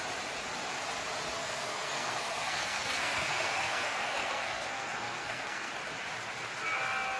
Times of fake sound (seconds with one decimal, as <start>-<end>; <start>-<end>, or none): 1.4-5.7